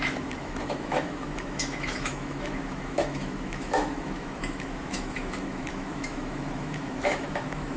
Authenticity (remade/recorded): remade